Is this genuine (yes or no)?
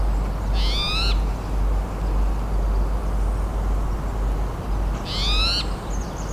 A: yes